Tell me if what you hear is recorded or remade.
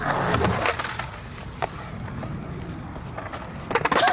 recorded